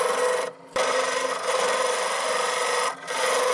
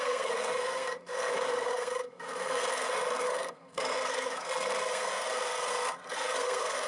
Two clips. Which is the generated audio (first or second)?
second